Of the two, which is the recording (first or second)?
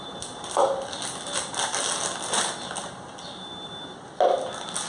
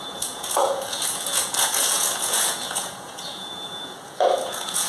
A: first